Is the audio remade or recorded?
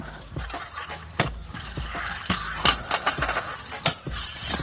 recorded